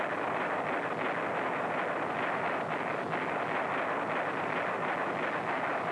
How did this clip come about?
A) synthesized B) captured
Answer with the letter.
B